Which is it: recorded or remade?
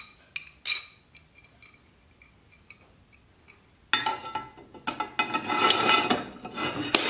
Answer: recorded